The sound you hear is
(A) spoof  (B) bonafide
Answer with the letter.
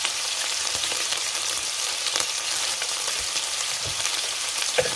A